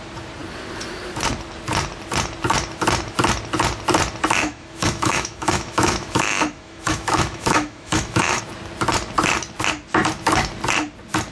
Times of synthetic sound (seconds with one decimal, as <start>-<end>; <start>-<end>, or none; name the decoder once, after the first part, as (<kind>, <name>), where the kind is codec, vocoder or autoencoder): 4.4-8.4 (autoencoder, DAC-VAE)